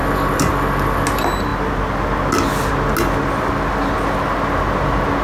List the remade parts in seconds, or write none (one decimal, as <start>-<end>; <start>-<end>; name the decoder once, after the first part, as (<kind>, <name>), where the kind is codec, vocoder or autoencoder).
none